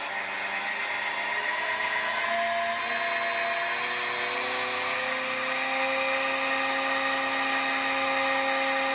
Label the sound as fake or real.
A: real